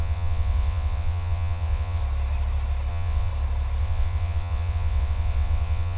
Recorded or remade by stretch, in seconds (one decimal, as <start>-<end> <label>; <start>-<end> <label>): 0.0-2.0 remade; 2.0-2.9 recorded; 2.9-3.3 remade; 3.3-3.8 recorded; 3.8-6.0 remade